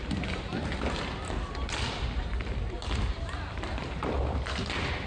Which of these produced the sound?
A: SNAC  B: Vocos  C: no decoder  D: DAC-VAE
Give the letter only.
C